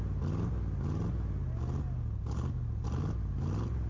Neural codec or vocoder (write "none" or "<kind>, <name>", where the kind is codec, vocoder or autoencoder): none